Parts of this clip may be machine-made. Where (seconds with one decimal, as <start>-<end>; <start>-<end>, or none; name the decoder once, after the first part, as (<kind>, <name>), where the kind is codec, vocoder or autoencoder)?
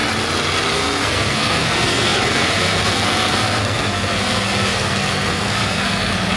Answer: 0.7-6.4 (codec, SNAC)